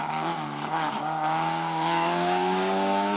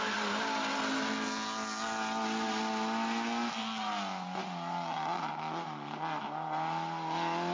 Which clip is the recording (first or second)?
second